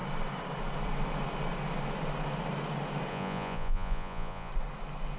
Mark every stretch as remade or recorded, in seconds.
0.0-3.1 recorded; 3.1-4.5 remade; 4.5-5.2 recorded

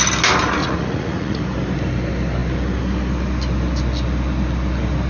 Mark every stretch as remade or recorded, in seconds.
0.0-0.6 recorded; 0.6-1.4 remade; 1.4-5.1 recorded

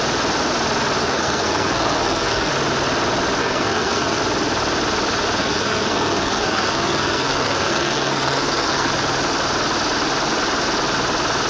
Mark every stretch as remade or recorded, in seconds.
0.0-1.0 recorded; 1.0-2.5 remade; 2.5-3.4 recorded; 3.4-4.2 remade; 4.2-5.4 recorded; 5.4-8.9 remade; 8.9-11.5 recorded

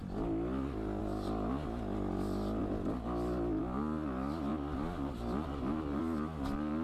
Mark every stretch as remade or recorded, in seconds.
0.0-6.8 recorded